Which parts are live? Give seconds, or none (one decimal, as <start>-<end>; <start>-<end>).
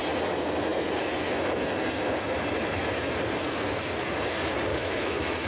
0.0-4.7